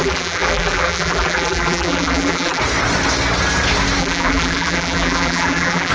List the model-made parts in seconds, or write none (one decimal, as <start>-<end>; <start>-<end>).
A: 0.0-2.6; 4.0-5.9